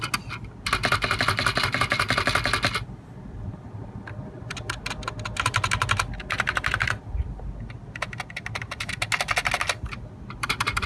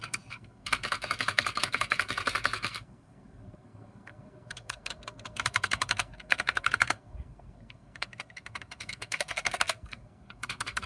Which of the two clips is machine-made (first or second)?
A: second